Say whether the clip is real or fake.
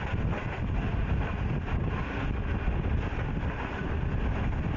real